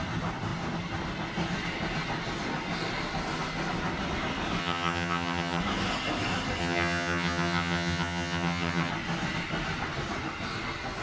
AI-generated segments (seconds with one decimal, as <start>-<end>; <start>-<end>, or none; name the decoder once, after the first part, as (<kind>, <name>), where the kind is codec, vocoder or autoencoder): 4.6-5.6 (vocoder, HiFi-GAN); 6.6-8.9